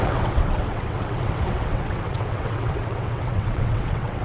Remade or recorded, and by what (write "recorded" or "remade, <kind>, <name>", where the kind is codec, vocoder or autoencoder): remade, vocoder, WaveNeXt